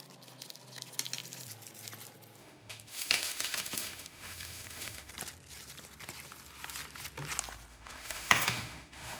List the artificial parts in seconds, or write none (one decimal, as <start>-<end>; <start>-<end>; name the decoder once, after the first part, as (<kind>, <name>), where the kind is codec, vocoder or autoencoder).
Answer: 2.4-5.1 (autoencoder, DAC-VAE); 7.7-9.2